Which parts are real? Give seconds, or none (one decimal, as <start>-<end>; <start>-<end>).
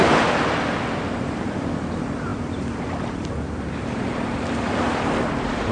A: none